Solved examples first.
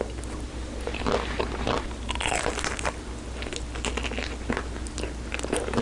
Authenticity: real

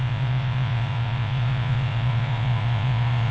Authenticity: fake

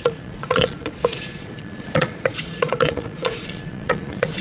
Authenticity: fake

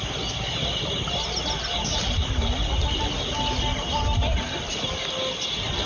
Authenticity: real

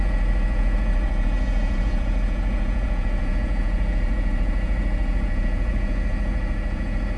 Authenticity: fake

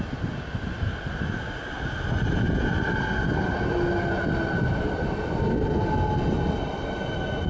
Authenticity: real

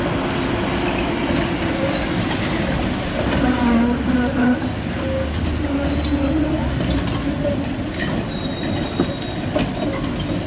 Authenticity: real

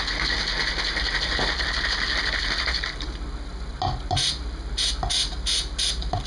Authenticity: real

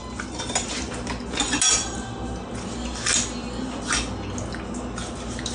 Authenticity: real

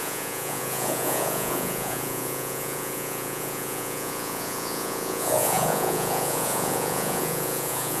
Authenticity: fake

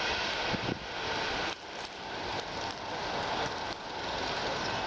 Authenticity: real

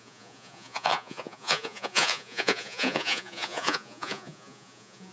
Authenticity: fake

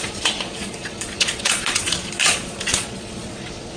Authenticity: fake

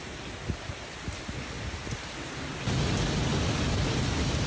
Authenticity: real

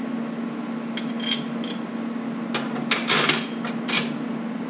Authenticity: real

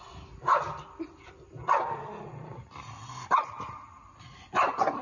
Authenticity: real